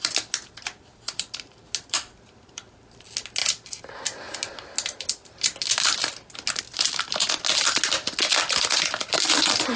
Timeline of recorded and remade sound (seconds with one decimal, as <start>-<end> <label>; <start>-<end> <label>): 0.0-9.8 recorded